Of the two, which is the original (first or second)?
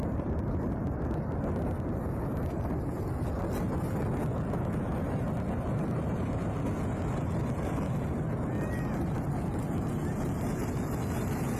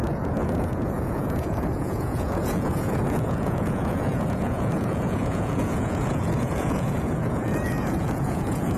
first